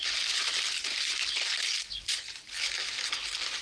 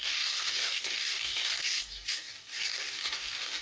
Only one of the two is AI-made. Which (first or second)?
second